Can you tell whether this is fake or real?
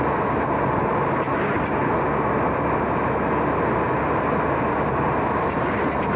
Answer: real